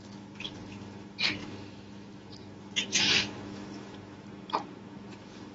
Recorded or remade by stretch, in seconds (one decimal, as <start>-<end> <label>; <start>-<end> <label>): 0.0-5.5 remade